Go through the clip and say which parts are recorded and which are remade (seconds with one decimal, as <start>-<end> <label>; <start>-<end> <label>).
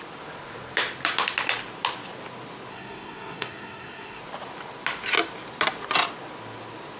0.0-2.7 recorded; 2.7-4.2 remade; 4.2-7.0 recorded